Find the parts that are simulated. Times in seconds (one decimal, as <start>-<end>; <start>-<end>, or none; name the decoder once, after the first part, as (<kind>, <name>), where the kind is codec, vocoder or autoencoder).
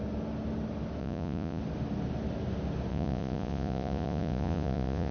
1.0-1.6 (vocoder, Vocos); 2.9-5.1